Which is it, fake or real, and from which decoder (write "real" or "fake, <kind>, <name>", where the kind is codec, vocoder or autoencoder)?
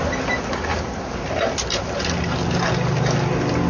real